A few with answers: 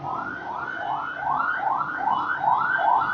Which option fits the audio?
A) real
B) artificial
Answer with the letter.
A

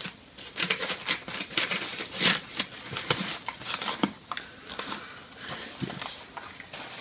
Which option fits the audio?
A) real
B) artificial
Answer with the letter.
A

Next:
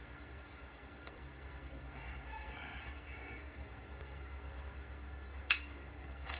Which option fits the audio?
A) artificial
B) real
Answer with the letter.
A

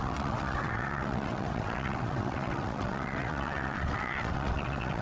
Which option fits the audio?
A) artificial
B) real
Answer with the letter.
A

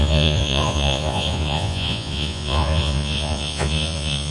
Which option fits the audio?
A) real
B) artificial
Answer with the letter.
B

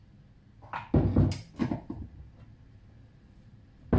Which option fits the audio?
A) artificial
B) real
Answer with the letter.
B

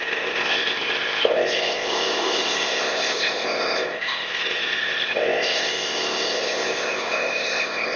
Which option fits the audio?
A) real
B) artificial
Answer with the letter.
B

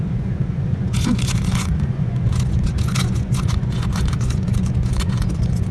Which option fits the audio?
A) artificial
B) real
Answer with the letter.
A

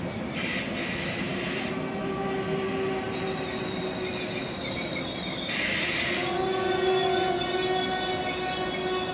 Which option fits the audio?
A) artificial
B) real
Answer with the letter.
B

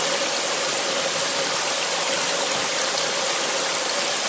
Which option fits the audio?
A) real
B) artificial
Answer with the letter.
A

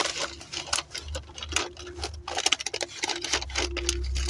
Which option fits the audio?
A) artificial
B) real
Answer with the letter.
B